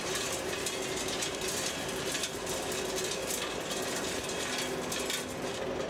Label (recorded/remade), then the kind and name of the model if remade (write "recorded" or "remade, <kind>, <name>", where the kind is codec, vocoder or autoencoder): recorded